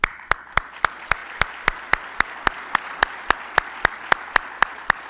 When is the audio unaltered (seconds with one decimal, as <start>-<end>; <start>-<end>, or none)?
0.0-5.1